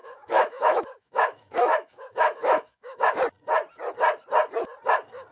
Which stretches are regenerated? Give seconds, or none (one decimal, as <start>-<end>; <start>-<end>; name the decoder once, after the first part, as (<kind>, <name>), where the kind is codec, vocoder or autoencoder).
0.0-3.2 (autoencoder, DAC-VAE)